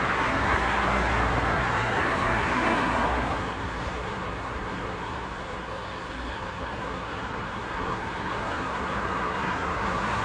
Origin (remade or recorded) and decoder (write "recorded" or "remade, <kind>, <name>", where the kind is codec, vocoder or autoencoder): remade, codec, SNAC